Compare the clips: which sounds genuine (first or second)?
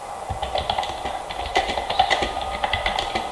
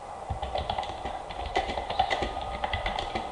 first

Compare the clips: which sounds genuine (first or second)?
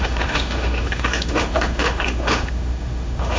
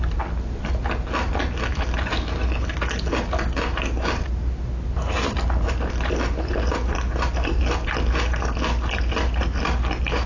second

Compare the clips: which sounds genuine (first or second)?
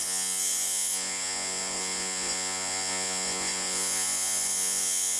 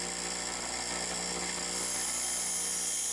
second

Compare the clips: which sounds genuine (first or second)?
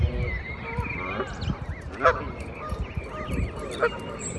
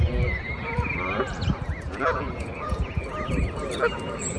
first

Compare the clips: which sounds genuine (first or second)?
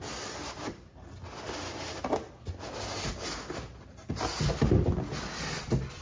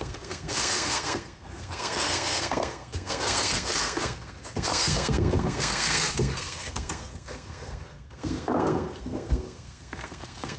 first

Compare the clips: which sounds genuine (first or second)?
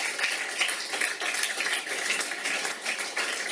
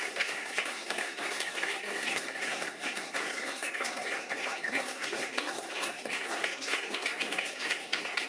first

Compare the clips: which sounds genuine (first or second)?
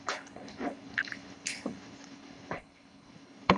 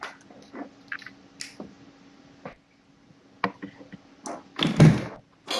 second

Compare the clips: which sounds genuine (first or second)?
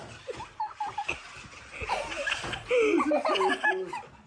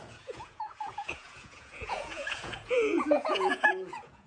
first